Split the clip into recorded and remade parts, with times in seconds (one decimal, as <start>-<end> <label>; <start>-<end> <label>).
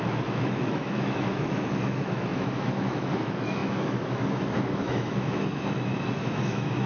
0.0-6.9 remade